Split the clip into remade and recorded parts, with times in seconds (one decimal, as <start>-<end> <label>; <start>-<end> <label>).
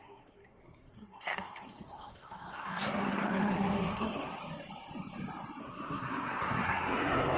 0.0-4.4 remade; 4.4-5.6 recorded; 5.6-7.4 remade